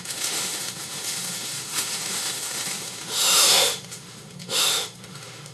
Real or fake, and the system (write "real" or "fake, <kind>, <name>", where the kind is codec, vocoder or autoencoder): fake, autoencoder, DAC-VAE